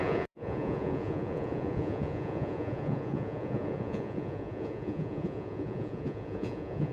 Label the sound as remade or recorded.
remade